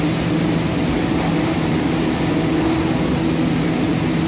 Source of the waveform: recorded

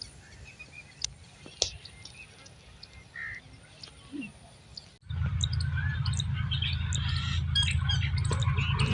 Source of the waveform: recorded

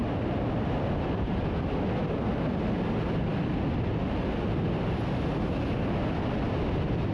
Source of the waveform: recorded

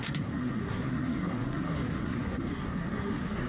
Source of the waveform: remade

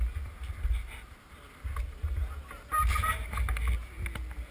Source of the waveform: recorded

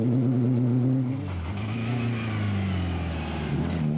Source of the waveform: recorded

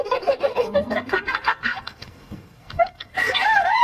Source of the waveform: remade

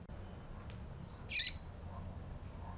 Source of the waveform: recorded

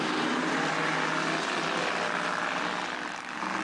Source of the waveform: recorded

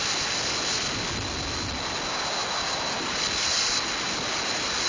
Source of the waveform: recorded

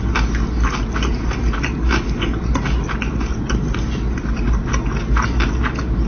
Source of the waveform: recorded